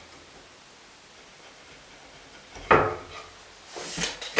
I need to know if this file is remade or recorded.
recorded